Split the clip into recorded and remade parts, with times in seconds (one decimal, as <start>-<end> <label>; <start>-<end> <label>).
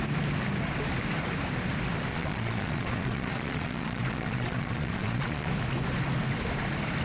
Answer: 0.0-2.1 recorded; 2.1-5.5 remade; 5.5-7.0 recorded